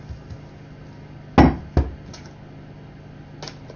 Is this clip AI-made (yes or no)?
no